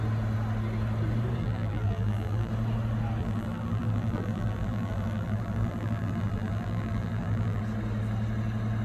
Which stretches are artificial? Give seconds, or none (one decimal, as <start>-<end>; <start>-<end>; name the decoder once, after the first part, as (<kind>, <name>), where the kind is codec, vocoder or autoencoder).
1.4-2.5 (vocoder, BigVGAN v2); 3.2-7.6